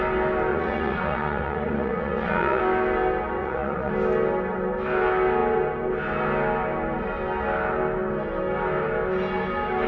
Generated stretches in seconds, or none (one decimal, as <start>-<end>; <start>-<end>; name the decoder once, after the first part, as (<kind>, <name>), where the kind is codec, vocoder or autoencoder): 0.5-2.6 (vocoder, Vocos); 3.4-3.9